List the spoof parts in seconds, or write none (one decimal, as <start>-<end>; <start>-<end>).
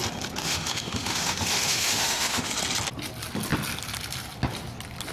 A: 0.4-2.5